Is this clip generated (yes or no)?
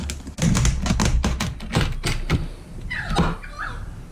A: no